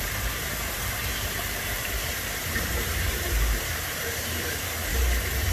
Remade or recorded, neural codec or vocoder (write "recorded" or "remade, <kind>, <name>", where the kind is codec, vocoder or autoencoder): remade, vocoder, BigVGAN v2